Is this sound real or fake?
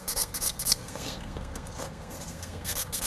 fake